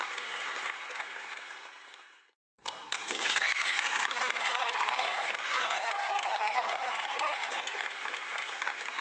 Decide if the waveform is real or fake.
fake